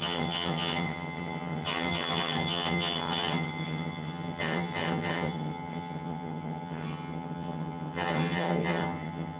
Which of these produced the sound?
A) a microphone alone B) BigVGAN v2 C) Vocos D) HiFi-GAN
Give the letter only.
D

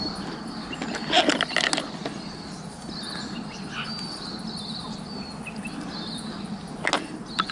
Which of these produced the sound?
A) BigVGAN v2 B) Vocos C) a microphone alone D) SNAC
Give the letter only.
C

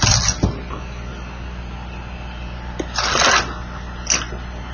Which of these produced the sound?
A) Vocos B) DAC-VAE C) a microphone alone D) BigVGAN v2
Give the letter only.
C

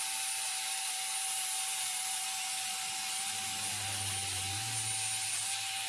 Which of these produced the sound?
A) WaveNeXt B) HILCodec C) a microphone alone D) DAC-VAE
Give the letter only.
C